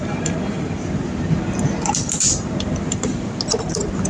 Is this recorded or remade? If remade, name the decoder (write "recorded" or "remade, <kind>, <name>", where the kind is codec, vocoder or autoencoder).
remade, vocoder, BigVGAN v2